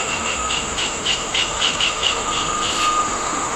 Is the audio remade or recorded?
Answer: remade